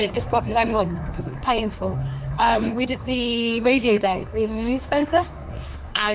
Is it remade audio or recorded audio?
remade